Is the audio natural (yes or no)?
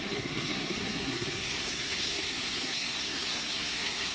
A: no